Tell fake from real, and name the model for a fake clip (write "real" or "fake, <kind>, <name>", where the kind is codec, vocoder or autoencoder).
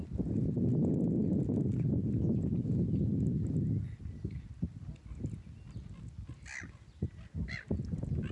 real